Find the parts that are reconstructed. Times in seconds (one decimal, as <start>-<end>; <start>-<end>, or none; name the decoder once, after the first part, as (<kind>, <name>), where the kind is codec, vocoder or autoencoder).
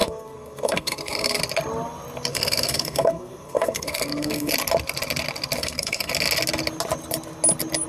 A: 0.0-1.4 (codec, SNAC); 2.3-4.5; 5.6-6.1